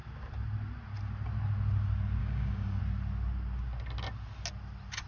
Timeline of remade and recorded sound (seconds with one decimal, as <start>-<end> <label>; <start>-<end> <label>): 0.0-2.2 recorded; 2.2-2.8 remade; 2.8-5.1 recorded